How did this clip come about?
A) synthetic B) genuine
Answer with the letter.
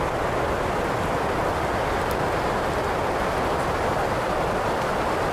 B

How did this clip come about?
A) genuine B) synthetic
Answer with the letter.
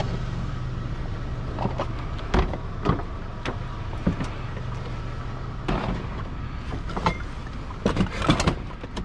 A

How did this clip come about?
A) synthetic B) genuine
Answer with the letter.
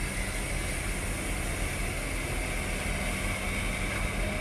B